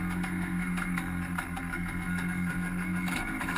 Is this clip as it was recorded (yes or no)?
no